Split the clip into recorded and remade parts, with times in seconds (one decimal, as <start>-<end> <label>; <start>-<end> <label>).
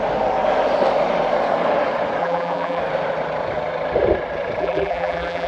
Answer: 0.0-2.2 recorded; 2.2-2.8 remade; 2.8-4.6 recorded; 4.6-5.5 remade